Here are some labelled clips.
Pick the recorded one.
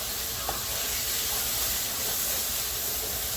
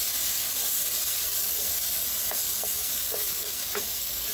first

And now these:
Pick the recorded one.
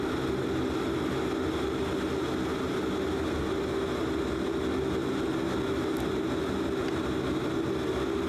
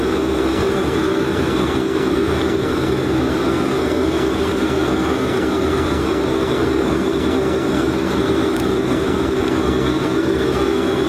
first